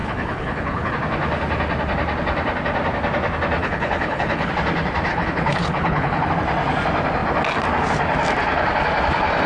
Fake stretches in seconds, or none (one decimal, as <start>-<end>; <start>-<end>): 0.0-0.9; 3.6-4.5; 5.1-6.3